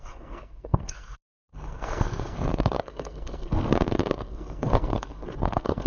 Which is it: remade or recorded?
remade